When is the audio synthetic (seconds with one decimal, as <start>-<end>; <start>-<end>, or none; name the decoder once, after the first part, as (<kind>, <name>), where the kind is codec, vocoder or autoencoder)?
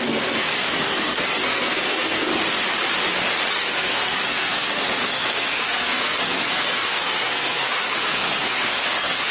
0.0-2.3 (codec, SNAC); 3.5-9.3